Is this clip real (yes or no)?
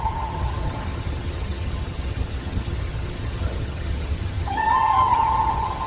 no